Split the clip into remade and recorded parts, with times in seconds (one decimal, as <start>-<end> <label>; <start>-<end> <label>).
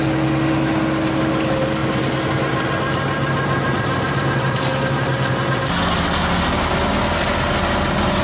0.0-8.2 recorded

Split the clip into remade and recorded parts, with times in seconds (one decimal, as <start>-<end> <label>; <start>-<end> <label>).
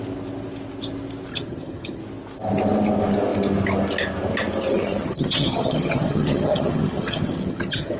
0.0-1.3 recorded; 1.3-2.0 remade; 2.0-4.7 recorded; 4.7-8.0 remade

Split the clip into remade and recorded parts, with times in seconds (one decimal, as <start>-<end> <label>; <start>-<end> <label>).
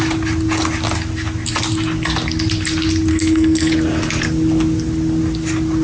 0.0-3.1 recorded; 3.1-3.7 remade; 3.7-5.8 recorded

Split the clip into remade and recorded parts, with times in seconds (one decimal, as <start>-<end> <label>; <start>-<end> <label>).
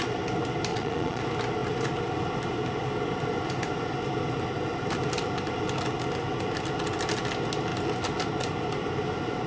0.0-0.7 recorded; 0.7-1.2 remade; 1.2-9.5 recorded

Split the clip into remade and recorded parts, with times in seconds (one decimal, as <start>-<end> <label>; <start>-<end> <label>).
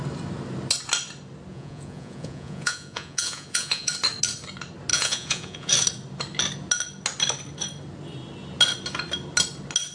0.0-1.5 recorded; 1.5-3.9 remade; 3.9-4.9 recorded; 4.9-5.7 remade; 5.7-9.9 recorded